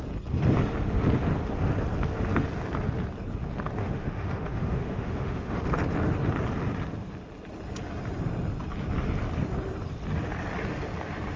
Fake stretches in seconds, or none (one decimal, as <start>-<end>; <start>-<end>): 3.8-5.6